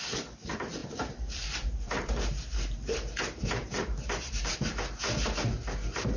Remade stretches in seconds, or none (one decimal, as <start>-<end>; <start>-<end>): 0.8-4.5